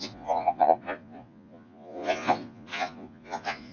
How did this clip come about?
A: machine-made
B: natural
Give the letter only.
A